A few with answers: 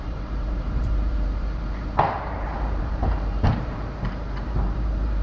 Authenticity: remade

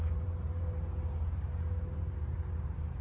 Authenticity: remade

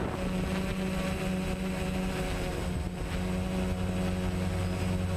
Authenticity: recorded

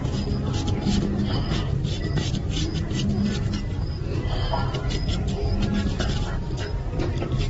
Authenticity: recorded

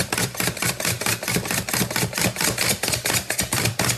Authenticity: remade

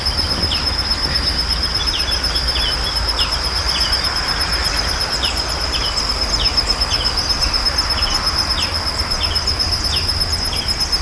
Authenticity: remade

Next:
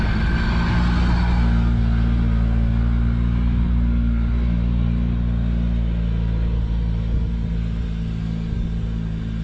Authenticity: recorded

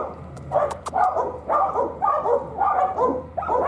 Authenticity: remade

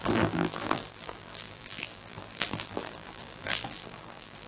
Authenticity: remade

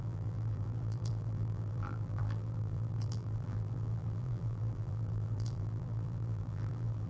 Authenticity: remade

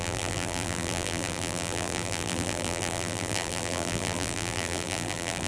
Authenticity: remade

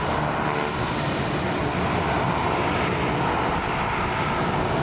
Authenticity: recorded